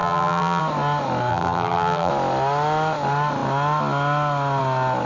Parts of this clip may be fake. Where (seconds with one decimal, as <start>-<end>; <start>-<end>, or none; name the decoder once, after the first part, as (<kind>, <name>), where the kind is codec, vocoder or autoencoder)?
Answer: 0.0-0.6 (vocoder, BigVGAN v2); 1.3-2.1